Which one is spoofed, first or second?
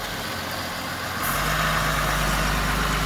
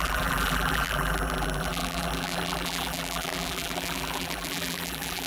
second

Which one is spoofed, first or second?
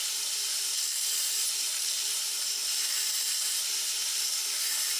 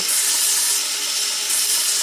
first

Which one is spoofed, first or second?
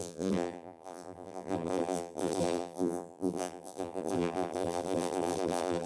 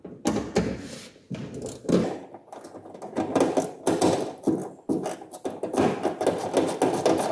first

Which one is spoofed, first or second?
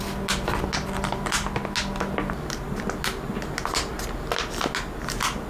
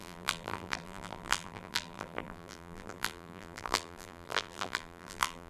second